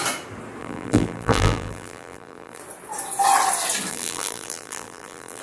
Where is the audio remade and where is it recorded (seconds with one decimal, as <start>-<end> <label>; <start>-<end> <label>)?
0.0-0.6 recorded; 0.6-2.6 remade; 2.6-3.9 recorded; 3.9-5.4 remade

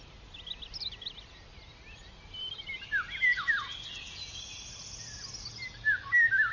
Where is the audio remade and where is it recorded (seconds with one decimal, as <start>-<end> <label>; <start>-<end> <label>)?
0.0-2.0 recorded; 2.0-4.4 remade; 4.4-6.5 recorded